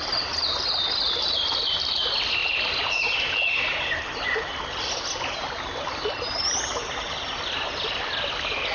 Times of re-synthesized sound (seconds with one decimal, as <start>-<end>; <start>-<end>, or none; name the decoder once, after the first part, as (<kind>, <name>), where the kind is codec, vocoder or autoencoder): 0.0-2.4 (vocoder, BigVGAN v2); 7.3-8.7